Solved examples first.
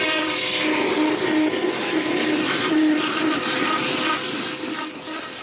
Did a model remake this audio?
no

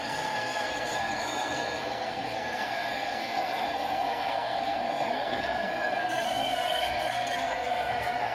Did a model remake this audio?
yes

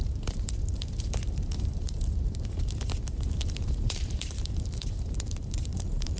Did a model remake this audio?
yes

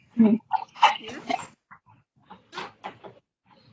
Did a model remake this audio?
no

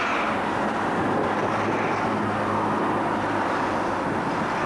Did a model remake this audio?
no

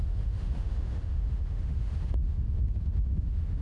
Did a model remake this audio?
yes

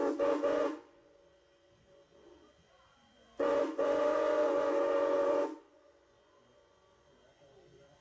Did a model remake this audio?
yes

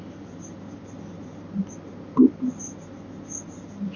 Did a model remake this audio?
no